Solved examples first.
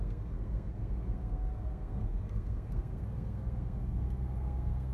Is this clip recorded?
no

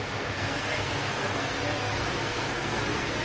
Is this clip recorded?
no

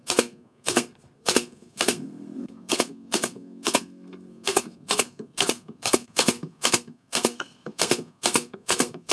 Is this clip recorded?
no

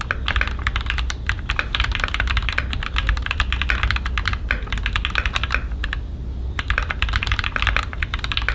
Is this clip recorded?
yes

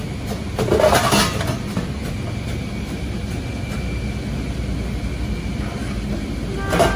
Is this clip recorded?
yes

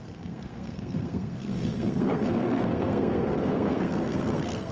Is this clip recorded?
no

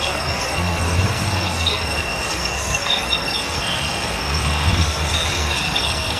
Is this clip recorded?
no